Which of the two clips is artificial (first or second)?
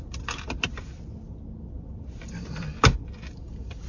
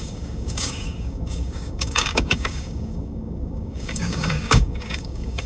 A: second